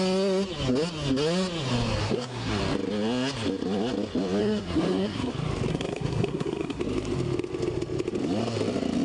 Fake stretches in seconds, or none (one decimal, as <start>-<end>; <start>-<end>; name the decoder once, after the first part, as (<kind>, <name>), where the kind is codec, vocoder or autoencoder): 2.0-2.6 (codec, SNAC); 4.4-5.3; 5.7-6.8